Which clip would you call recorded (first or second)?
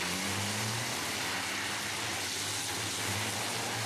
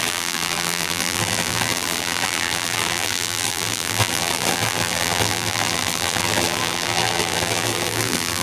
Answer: first